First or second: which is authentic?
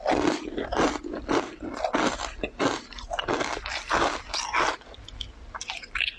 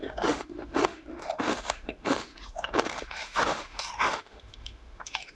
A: first